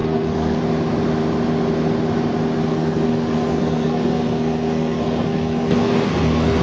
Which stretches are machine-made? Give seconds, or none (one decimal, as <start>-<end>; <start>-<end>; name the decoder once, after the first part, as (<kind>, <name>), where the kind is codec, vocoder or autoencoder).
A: 0.0-0.6 (codec, SNAC); 2.7-6.6